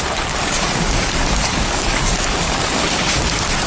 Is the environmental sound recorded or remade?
remade